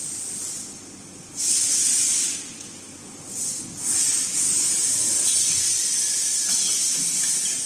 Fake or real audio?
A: real